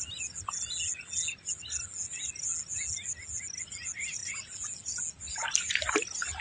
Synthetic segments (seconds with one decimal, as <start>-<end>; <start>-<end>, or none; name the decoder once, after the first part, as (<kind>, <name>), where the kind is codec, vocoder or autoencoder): none

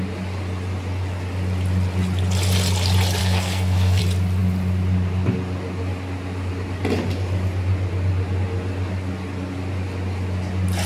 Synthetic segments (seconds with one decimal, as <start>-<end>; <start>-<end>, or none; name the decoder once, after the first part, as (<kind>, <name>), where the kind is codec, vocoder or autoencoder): 3.2-4.0 (codec, SNAC)

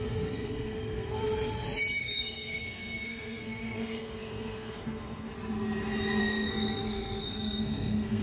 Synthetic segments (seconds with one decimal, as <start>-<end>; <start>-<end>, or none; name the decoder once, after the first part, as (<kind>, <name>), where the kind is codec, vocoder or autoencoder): 0.0-1.2 (codec, SNAC); 2.0-5.3; 6.2-8.2

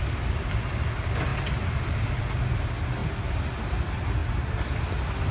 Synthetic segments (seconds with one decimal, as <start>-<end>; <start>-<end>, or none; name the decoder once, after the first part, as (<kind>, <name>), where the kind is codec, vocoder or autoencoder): none

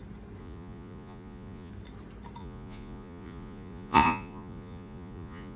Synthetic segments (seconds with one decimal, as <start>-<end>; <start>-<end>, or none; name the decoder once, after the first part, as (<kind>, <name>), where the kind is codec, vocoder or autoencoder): 0.4-1.7 (vocoder, Vocos); 2.4-5.6

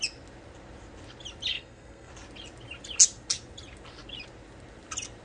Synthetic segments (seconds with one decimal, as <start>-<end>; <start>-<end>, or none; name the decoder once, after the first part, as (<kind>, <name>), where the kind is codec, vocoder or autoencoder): 1.5-2.1 (codec, SNAC)